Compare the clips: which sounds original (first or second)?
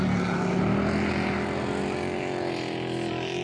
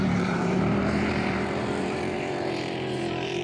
first